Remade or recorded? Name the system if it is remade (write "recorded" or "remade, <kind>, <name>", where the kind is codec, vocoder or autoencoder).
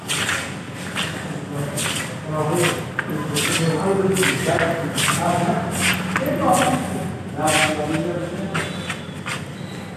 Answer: recorded